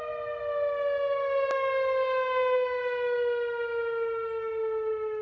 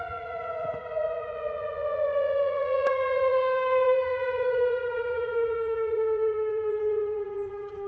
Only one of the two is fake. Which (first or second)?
second